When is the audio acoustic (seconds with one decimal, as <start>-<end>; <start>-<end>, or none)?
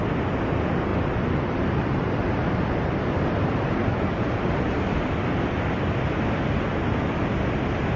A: 0.0-0.9; 4.7-6.8; 7.4-8.0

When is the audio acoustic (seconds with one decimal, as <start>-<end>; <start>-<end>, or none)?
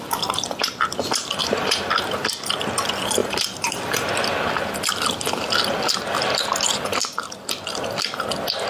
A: 0.0-1.4; 2.3-3.2; 4.1-8.7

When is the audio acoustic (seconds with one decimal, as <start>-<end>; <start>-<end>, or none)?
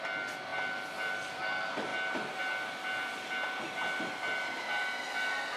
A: 0.0-5.6